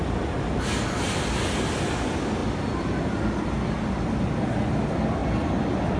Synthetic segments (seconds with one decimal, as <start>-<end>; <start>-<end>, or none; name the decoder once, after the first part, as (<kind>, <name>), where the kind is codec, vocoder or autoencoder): none